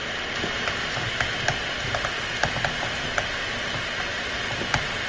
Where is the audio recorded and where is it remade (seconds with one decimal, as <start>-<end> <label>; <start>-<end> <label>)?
0.0-5.1 recorded